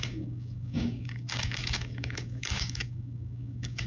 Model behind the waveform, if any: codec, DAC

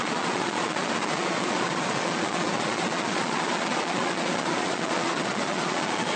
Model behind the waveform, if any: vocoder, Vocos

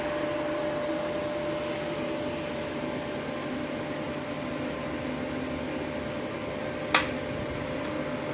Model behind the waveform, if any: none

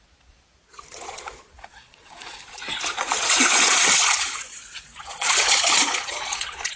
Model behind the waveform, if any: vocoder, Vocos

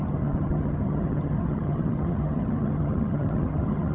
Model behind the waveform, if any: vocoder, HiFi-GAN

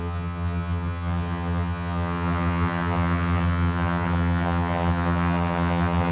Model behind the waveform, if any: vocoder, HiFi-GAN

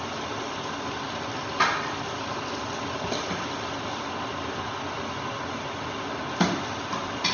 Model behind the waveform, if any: none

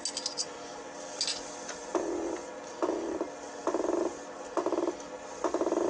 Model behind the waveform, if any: none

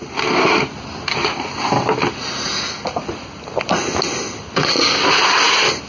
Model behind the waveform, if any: none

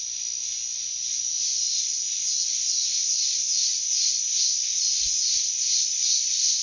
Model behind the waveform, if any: none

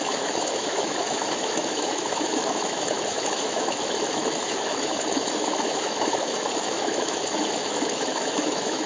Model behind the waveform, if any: autoencoder, DAC-VAE